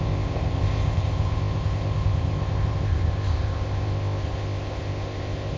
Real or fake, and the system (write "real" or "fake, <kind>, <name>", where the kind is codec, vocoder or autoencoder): fake, codec, ZipCodec